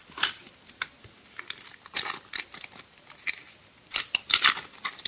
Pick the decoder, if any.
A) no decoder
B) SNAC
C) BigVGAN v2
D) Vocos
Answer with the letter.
A